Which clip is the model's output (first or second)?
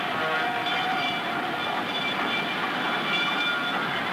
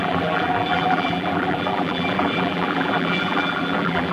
second